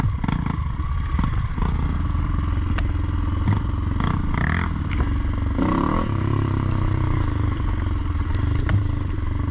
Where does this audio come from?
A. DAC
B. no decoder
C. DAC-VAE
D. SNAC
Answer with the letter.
B